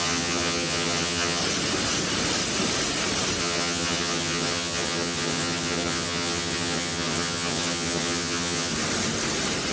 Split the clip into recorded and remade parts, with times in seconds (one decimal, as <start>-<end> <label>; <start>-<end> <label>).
0.0-1.4 remade; 1.4-3.4 recorded; 3.4-8.7 remade; 8.7-9.7 recorded